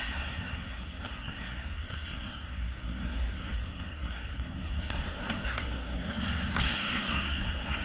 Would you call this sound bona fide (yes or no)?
no